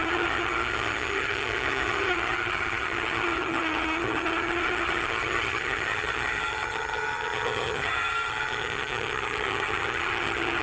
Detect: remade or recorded remade